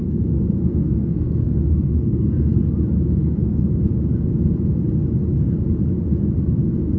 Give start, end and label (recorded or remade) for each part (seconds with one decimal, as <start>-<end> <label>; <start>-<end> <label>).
0.0-2.6 remade; 2.6-3.2 recorded; 3.2-3.7 remade; 3.7-7.0 recorded